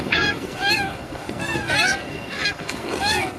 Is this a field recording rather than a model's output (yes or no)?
no